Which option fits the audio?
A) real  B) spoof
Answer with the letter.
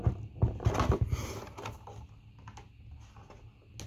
A